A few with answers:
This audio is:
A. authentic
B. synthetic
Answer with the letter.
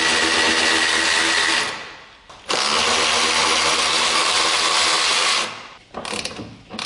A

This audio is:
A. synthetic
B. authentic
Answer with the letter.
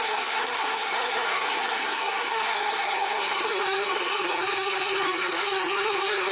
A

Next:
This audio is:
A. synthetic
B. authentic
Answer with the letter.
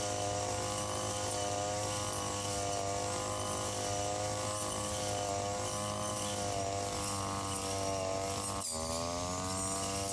B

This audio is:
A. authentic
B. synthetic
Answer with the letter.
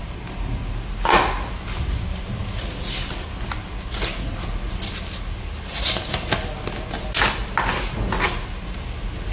A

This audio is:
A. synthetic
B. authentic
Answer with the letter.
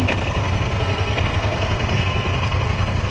A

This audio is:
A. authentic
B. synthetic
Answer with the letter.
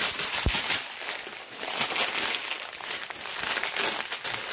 A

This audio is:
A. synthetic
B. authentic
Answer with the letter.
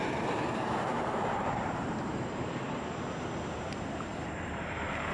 A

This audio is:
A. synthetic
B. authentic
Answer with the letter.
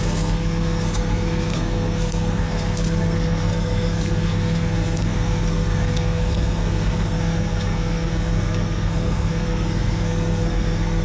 A